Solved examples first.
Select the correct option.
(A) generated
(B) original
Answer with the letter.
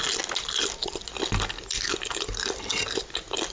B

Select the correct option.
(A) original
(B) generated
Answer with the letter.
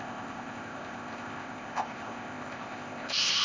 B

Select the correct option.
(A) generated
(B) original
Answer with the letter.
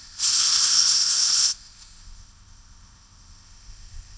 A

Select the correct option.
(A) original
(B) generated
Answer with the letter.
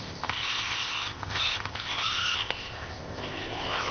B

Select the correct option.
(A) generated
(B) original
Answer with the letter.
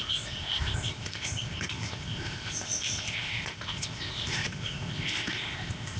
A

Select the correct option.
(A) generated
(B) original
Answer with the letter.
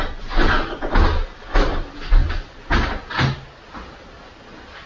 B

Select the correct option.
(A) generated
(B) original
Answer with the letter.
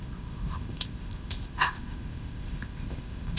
A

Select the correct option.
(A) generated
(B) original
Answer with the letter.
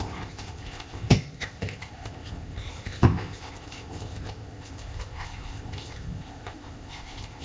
A